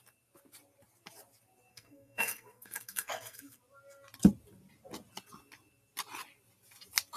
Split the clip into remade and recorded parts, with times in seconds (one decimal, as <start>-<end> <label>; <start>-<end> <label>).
0.0-1.7 recorded; 1.7-3.6 remade; 3.6-7.2 recorded